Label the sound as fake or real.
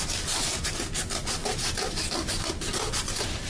real